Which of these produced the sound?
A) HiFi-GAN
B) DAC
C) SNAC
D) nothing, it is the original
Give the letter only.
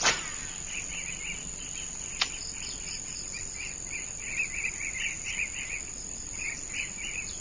D